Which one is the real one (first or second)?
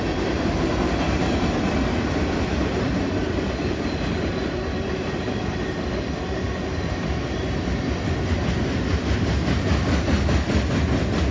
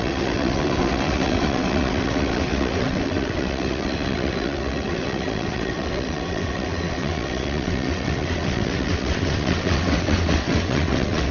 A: first